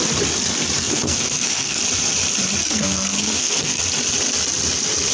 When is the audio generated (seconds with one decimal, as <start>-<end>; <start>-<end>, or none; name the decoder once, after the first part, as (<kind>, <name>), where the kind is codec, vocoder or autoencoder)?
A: 0.8-1.8 (codec, SNAC); 2.6-3.8